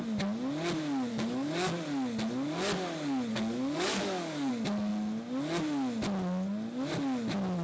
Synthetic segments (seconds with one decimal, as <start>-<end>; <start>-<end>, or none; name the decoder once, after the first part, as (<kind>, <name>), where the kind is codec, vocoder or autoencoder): 1.1-1.8 (codec, DAC); 3.3-4.5